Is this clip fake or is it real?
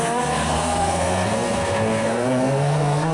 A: fake